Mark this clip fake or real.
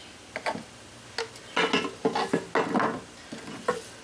real